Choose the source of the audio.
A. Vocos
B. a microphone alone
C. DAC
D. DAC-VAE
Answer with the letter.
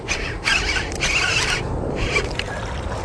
B